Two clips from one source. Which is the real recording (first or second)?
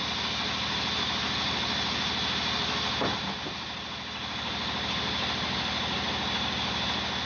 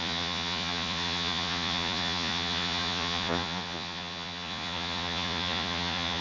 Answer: first